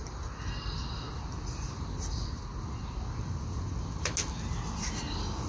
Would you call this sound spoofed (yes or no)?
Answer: no